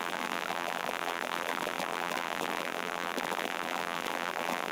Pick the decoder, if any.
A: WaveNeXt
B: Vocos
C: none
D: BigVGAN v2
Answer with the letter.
D